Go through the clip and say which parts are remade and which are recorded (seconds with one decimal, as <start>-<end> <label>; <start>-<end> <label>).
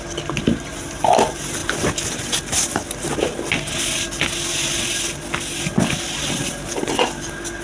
0.0-7.6 recorded